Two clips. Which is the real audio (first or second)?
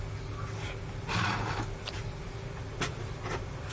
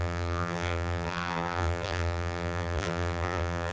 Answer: first